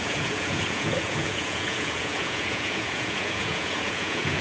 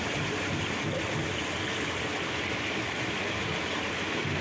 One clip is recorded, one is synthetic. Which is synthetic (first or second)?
first